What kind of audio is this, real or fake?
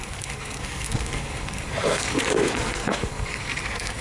fake